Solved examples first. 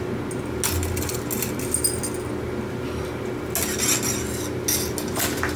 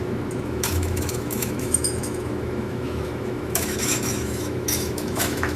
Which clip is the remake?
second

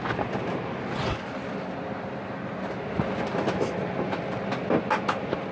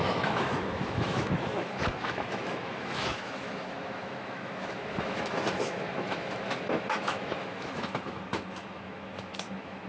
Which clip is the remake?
second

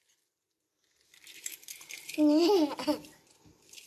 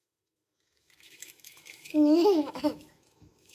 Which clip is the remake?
second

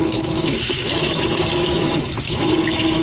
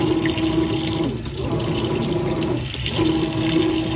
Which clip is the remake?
first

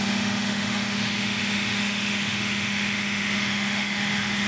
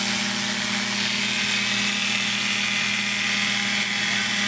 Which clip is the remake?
first